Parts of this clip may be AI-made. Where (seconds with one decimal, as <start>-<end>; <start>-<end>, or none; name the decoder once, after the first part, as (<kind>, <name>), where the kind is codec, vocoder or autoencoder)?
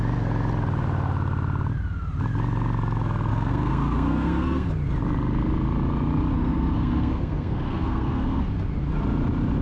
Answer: 3.3-4.7 (codec, SNAC); 6.3-8.4